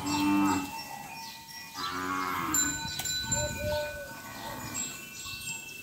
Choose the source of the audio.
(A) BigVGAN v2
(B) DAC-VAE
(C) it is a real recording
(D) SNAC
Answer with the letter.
C